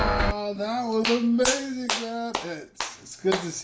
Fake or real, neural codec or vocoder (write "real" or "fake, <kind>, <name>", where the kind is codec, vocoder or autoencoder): real